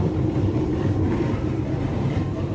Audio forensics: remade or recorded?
recorded